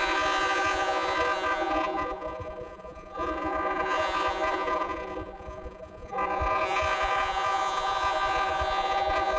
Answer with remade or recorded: remade